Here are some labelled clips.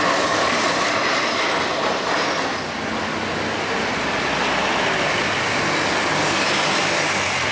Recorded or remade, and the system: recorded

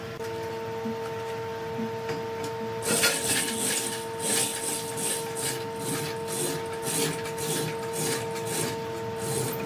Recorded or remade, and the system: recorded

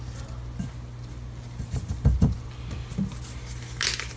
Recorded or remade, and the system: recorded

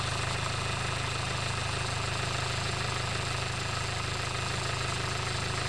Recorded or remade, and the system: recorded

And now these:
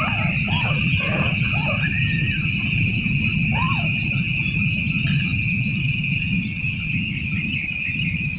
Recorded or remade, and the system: recorded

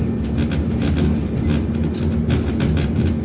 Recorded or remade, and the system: recorded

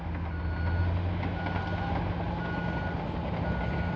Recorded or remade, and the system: recorded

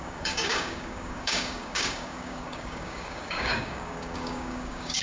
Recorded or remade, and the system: remade, codec, DAC